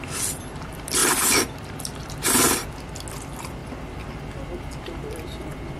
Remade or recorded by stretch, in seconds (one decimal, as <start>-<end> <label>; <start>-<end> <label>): 0.0-5.8 recorded

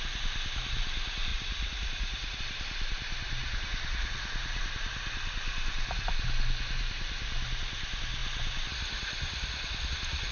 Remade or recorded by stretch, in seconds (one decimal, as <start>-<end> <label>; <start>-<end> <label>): 0.0-1.3 recorded; 1.3-2.4 remade; 2.4-3.4 recorded; 3.4-4.6 remade; 4.6-10.3 recorded

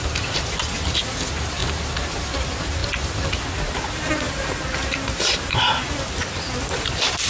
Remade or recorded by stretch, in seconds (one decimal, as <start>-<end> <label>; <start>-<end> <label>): 0.0-7.3 recorded